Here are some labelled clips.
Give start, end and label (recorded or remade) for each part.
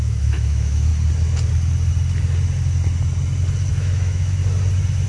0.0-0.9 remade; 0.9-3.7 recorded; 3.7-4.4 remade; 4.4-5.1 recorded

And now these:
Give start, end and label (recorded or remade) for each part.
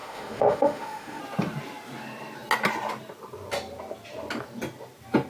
0.0-1.2 remade; 1.2-5.3 recorded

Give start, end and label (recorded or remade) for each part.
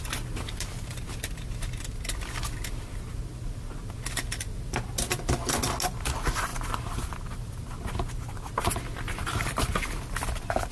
0.0-10.7 recorded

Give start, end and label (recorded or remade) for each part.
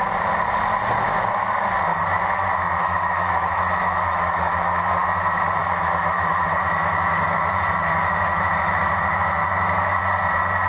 0.0-1.9 recorded; 1.9-4.9 remade; 4.9-5.6 recorded; 5.6-10.0 remade; 10.0-10.7 recorded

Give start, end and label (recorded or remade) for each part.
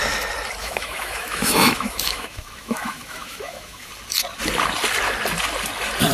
0.0-0.6 recorded; 0.6-3.9 remade; 3.9-6.1 recorded